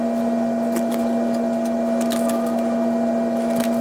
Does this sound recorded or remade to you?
recorded